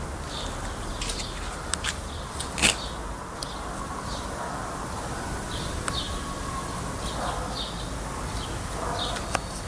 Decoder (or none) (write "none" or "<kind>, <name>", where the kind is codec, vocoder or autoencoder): none